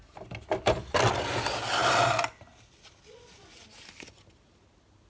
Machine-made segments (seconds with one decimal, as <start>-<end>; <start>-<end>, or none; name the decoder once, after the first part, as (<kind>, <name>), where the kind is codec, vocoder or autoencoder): none